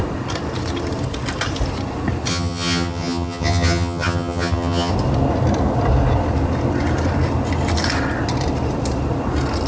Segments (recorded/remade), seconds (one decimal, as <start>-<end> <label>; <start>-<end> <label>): 0.0-2.3 recorded; 2.3-4.9 remade; 4.9-9.7 recorded